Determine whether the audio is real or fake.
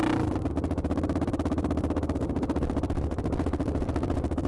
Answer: fake